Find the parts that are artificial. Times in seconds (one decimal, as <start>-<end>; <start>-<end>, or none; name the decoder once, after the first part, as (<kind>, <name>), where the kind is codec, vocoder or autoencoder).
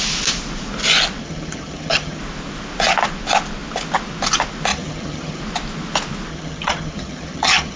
1.2-2.2 (vocoder, HiFi-GAN); 4.7-5.4; 6.3-7.8